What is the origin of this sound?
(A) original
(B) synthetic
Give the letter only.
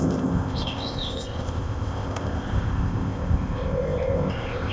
B